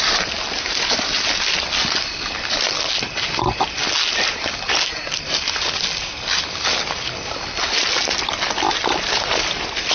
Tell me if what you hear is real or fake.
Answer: real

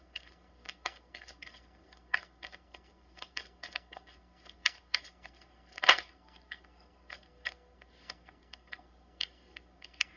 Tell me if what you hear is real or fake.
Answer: fake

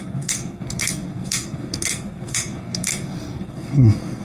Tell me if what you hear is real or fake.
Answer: fake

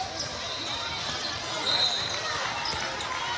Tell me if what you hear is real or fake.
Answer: real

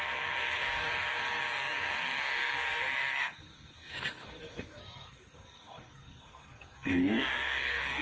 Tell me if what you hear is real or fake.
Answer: fake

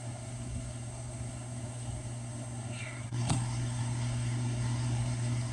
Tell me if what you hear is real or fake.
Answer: fake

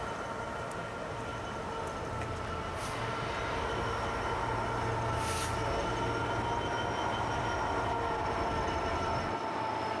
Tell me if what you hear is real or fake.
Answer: real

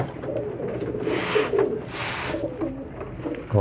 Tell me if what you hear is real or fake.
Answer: real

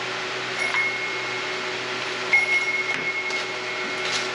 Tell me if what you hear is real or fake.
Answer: real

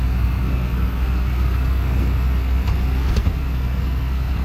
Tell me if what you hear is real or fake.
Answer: fake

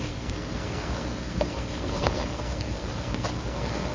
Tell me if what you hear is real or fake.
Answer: fake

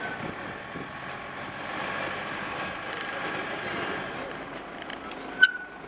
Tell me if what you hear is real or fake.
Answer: real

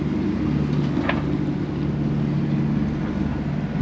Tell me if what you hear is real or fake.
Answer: real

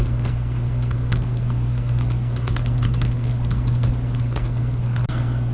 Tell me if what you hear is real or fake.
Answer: fake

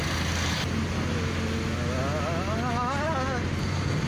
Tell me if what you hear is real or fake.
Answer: real